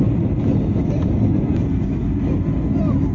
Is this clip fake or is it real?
real